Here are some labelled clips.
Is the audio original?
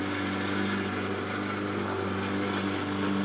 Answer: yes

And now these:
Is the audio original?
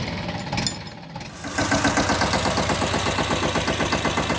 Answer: yes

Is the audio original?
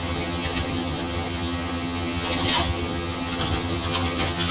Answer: no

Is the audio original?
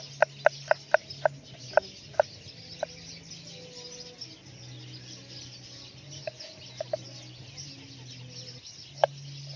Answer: yes